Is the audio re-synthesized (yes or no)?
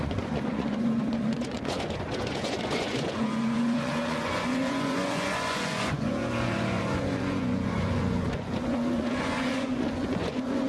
yes